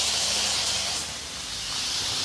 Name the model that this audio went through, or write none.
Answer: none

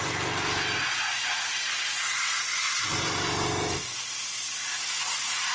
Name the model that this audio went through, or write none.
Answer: none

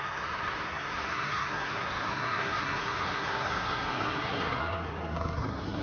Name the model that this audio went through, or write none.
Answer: codec, SNAC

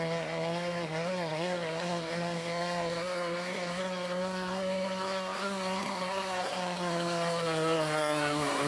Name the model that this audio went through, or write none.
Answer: codec, SNAC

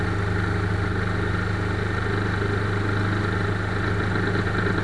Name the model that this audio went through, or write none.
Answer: none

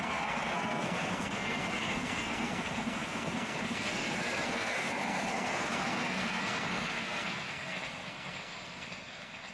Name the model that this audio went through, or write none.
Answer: codec, SNAC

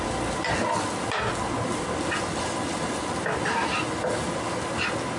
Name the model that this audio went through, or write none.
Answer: none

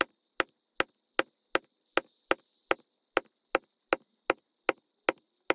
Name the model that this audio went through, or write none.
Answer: none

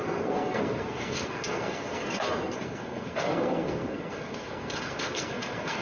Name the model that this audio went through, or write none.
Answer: codec, SNAC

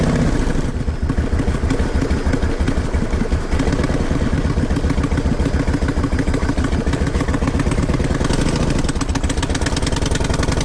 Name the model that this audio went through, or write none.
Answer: none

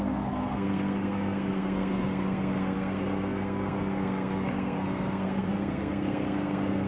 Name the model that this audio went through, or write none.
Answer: codec, SNAC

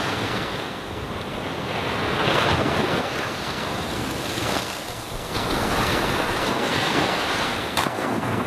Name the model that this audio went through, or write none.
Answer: codec, SNAC